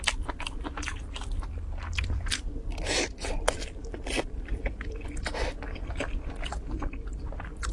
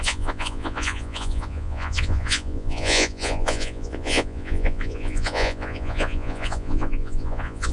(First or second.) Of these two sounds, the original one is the first